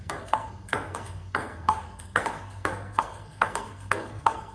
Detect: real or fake fake